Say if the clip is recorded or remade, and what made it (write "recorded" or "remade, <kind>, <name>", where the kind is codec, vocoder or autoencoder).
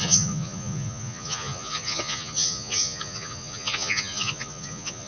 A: remade, vocoder, Vocos